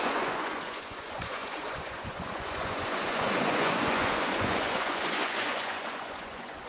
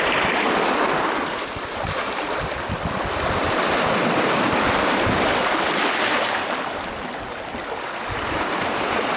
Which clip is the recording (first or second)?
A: second